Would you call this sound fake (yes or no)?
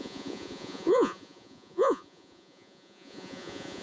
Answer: yes